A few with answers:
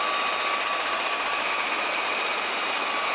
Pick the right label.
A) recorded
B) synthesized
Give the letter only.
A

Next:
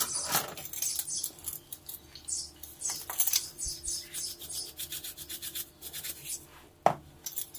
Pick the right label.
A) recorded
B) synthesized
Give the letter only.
A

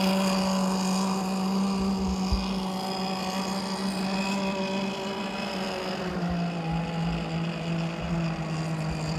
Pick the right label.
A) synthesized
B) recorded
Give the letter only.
B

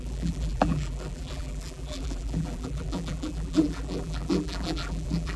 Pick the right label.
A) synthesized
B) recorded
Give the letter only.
A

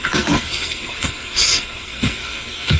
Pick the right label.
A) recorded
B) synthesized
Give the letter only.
B